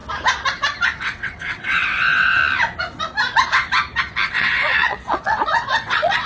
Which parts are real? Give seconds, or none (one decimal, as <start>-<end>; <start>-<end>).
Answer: 0.0-1.0; 2.4-4.3